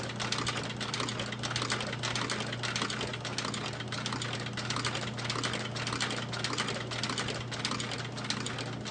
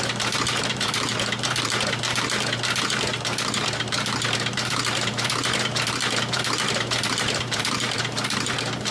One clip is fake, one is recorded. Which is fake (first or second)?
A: second